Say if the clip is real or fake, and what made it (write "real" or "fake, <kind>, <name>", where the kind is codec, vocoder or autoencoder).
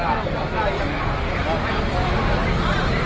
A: real